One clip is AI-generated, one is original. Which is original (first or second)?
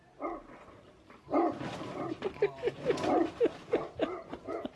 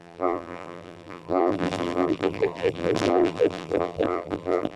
first